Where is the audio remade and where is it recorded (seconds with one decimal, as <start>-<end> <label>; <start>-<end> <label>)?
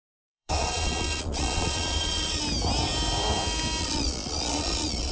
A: 0.0-2.4 remade; 2.4-3.8 recorded; 3.8-5.1 remade